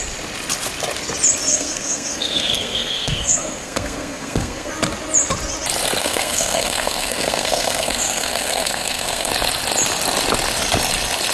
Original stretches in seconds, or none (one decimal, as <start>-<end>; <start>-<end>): 0.0-1.5; 4.7-6.0; 9.3-11.3